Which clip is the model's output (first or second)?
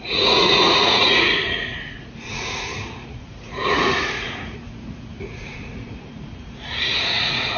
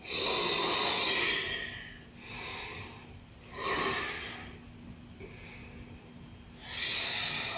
first